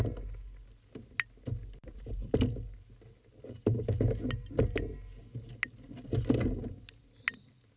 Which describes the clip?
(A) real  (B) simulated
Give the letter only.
A